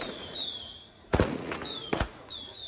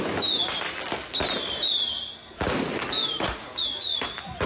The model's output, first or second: first